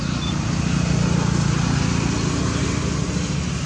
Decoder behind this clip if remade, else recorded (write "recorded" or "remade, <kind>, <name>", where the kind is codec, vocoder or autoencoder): recorded